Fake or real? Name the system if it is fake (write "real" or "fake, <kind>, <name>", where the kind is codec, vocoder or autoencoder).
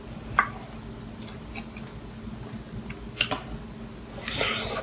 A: real